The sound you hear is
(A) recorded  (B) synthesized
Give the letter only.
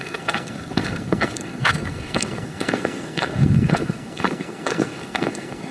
B